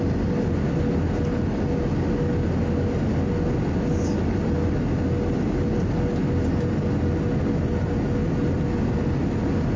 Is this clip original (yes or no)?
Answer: yes